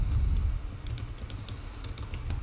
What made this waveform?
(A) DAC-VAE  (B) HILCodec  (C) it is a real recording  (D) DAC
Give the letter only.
C